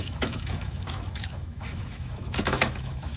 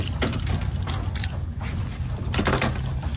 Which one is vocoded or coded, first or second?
first